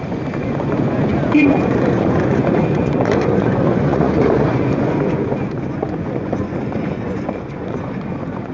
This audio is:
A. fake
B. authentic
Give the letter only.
A